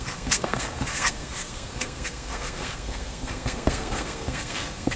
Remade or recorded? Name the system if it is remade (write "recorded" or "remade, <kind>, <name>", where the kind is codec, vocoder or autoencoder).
remade, codec, SNAC